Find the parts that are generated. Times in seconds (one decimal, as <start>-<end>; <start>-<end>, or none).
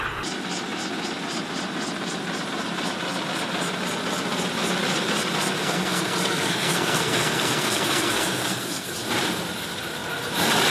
5.6-8.9